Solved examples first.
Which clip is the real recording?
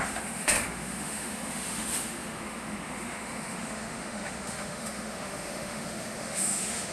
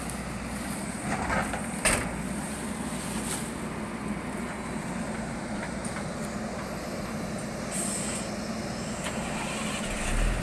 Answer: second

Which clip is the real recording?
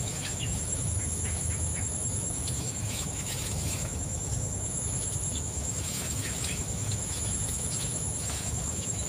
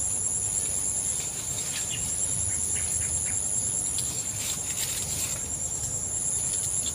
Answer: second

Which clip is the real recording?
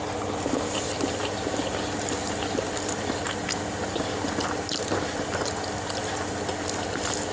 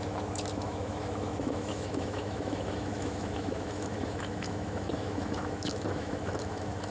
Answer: first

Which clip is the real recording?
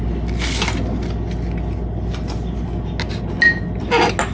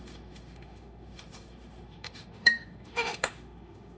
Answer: first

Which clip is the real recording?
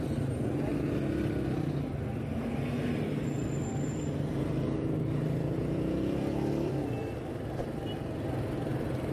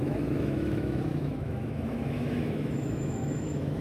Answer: first